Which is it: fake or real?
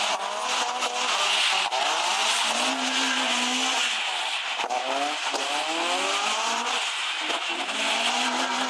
real